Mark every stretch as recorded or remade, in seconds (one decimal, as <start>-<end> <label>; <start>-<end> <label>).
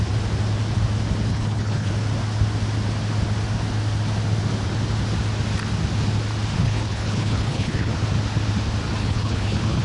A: 0.0-1.3 recorded; 1.3-1.9 remade; 1.9-6.6 recorded; 6.6-7.9 remade; 7.9-9.0 recorded; 9.0-9.8 remade